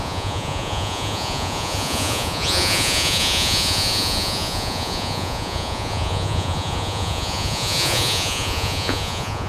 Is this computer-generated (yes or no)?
yes